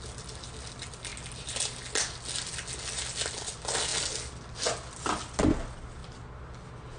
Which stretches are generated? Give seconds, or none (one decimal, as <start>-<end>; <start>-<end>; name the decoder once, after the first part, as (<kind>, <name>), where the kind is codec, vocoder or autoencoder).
none